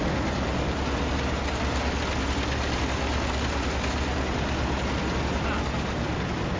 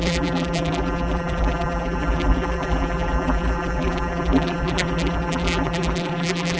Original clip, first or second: first